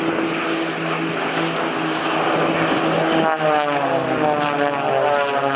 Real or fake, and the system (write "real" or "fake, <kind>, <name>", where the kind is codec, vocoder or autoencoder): real